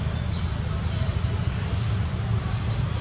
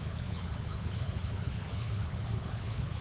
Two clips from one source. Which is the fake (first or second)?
second